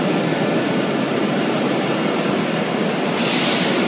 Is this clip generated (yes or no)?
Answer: no